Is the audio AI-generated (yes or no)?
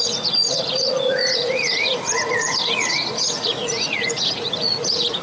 yes